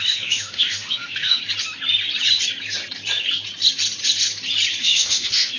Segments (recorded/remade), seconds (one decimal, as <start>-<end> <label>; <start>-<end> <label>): 0.0-1.4 remade; 1.4-4.8 recorded; 4.8-5.6 remade